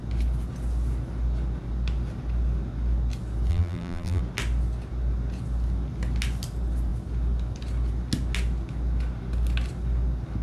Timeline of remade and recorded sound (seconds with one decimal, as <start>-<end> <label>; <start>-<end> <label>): 0.0-3.5 recorded; 3.5-4.2 remade; 4.2-10.4 recorded